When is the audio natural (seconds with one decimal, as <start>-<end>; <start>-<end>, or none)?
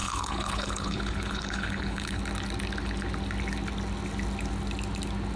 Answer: 2.2-5.4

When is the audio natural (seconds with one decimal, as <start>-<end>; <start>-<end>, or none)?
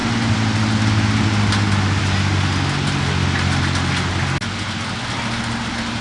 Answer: 0.0-6.0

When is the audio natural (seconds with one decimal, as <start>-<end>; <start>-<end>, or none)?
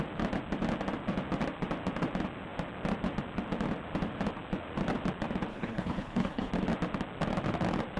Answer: 0.0-5.5; 6.5-8.0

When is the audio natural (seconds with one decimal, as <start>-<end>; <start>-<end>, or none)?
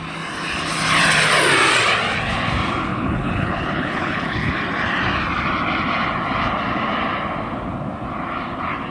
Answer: 0.0-2.9; 4.5-8.9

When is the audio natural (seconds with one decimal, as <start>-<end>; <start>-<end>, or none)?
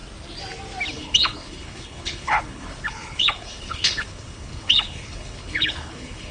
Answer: 0.0-0.9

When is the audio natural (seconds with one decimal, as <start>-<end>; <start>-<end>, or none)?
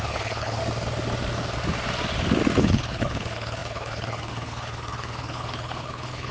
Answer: 0.6-2.6